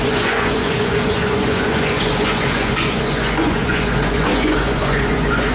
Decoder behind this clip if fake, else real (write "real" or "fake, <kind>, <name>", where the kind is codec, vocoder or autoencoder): fake, vocoder, Vocos